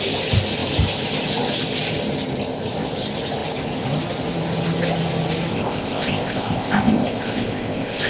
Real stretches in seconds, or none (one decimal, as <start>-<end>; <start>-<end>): 0.0-5.5